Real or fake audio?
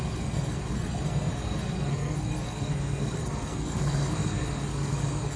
fake